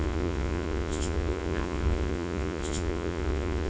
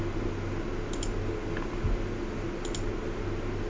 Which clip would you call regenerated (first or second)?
first